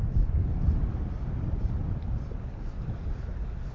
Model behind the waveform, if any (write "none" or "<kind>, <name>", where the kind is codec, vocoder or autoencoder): none